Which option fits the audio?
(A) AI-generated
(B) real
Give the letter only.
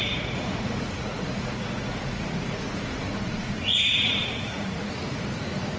A